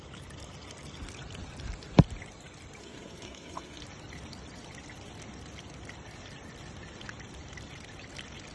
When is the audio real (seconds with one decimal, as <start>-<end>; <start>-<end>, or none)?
0.0-2.8; 3.8-8.5